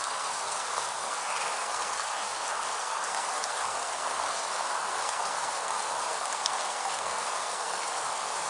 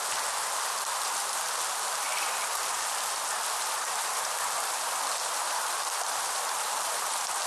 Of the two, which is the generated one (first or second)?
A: first